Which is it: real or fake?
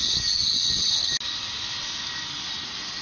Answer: real